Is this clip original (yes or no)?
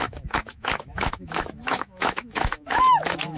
no